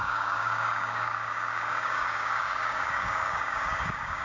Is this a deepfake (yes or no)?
yes